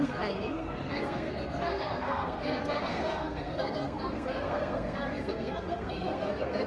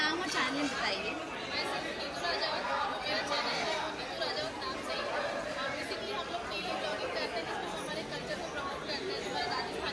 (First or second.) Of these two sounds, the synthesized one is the first